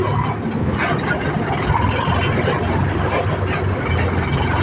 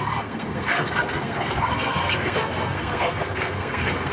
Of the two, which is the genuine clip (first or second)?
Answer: first